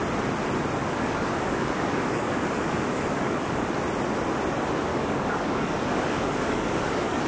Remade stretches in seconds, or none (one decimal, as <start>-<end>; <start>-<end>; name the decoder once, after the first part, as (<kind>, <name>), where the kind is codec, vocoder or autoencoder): 0.8-3.7 (codec, DAC); 4.9-7.3